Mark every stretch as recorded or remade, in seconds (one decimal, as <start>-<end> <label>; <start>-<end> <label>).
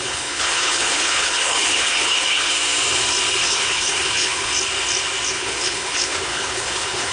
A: 0.0-2.5 remade; 2.5-3.4 recorded; 3.4-4.5 remade; 4.5-5.3 recorded; 5.3-7.1 remade